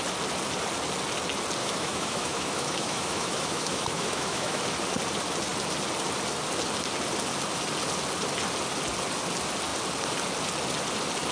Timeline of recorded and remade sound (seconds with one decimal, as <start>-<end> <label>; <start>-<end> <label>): 0.0-1.6 recorded; 1.6-4.6 remade; 4.6-11.3 recorded